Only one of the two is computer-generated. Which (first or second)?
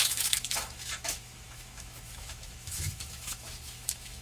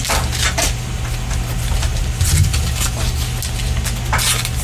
first